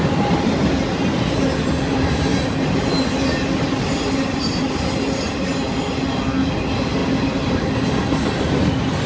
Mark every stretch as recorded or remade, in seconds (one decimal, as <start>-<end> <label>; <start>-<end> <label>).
0.0-7.0 recorded; 7.0-7.9 remade; 7.9-9.1 recorded